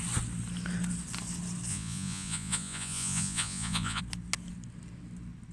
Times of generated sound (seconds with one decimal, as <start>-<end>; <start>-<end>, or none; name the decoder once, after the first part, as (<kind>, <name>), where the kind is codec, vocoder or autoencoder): 1.7-4.0 (vocoder, Vocos)